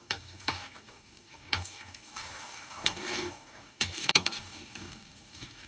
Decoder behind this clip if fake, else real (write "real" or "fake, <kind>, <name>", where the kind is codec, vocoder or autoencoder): fake, codec, DAC